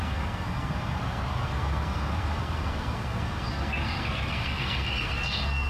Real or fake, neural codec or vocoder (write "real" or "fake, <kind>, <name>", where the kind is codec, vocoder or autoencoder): fake, codec, SNAC